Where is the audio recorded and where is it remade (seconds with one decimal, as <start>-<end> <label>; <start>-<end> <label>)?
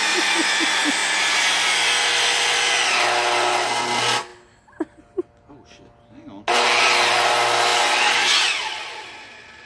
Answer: 0.0-9.7 recorded